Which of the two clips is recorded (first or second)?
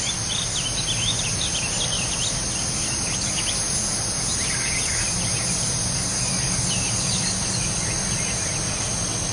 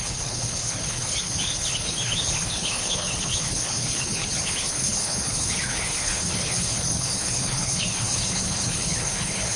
first